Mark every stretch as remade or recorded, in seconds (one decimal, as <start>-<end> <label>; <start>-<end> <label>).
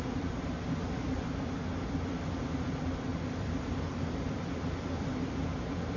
0.0-6.0 remade